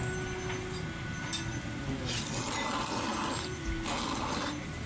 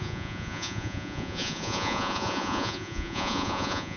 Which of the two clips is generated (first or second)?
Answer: second